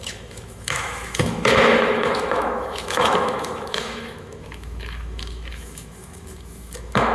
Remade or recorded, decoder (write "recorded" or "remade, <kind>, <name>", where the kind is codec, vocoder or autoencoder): remade, autoencoder, DAC-VAE